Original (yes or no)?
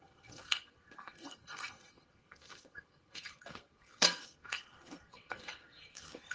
no